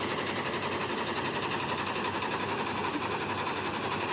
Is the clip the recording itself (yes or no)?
yes